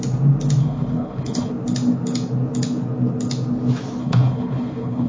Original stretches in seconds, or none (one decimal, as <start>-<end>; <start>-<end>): 0.0-0.6; 1.5-4.0